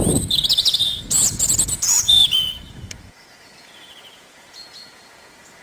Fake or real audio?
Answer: fake